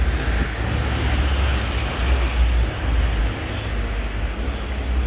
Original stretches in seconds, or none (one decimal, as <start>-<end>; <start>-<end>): 0.0-5.1